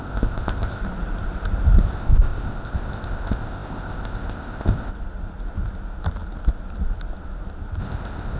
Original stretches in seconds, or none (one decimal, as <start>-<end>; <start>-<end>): 0.8-1.8; 4.9-7.8